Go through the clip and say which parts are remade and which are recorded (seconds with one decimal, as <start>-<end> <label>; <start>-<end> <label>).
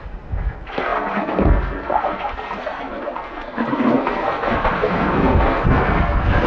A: 0.0-6.5 remade